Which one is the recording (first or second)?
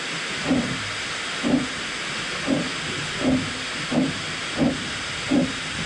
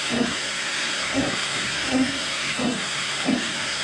first